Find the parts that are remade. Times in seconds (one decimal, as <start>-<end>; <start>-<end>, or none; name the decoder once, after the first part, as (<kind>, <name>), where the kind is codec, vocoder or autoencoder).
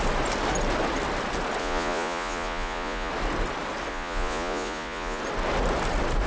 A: 1.6-3.1 (vocoder, Vocos); 3.9-5.2